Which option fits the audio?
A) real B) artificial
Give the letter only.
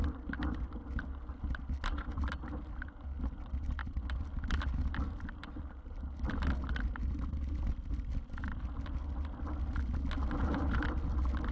A